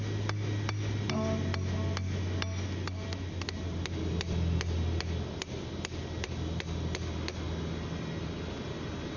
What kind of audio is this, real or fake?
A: real